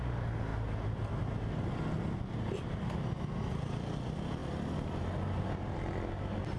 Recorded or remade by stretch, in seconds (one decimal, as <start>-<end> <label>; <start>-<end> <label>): 0.0-6.6 recorded